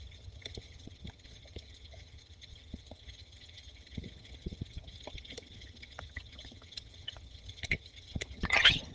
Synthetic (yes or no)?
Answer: yes